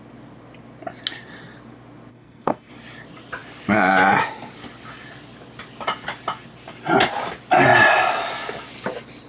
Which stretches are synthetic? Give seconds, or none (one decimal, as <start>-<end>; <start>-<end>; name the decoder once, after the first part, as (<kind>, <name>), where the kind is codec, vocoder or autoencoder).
2.1-2.7 (codec, SNAC)